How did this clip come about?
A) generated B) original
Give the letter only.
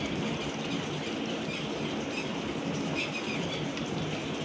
B